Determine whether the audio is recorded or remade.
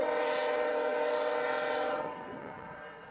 remade